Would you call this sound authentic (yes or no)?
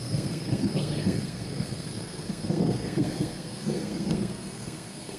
no